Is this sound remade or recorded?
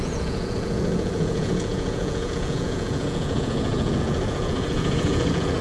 remade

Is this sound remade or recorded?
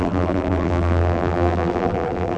remade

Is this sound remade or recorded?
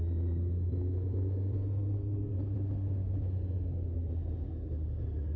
recorded